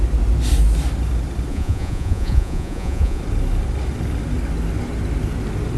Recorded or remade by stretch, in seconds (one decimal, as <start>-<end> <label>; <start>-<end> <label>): 0.0-1.5 recorded; 1.5-3.2 remade; 3.2-5.8 recorded